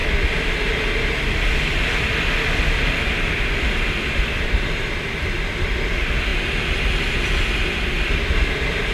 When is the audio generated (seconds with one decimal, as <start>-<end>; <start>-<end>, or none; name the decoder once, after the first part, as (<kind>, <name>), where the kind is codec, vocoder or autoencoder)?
3.1-6.3 (vocoder, BigVGAN v2); 7.8-8.9